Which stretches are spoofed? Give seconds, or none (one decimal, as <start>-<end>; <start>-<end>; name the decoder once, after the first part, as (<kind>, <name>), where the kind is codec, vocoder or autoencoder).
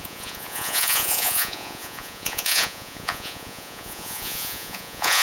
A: 0.0-5.2 (vocoder, Vocos)